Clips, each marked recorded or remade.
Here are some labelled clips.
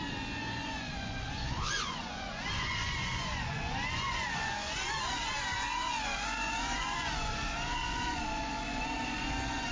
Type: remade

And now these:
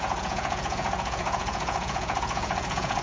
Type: remade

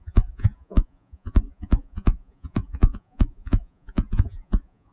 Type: remade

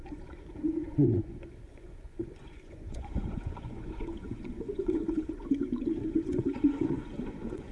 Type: remade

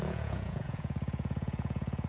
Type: remade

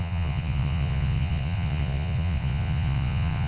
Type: remade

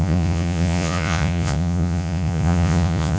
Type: remade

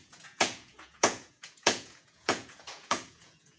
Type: remade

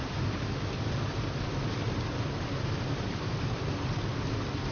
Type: recorded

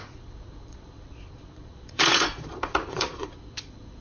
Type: remade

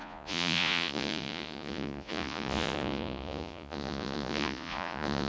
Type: remade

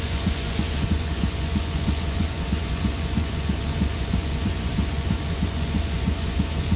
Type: remade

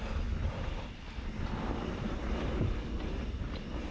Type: recorded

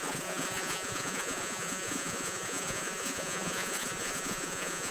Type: remade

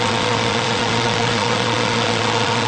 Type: remade